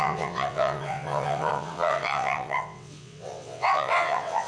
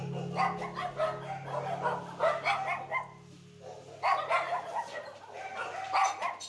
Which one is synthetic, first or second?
first